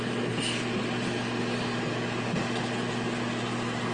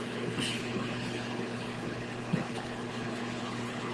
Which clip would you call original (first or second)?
first